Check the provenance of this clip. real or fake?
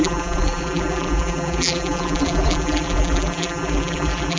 fake